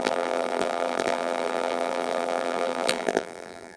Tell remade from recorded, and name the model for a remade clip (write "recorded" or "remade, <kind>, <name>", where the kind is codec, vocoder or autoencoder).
remade, vocoder, BigVGAN v2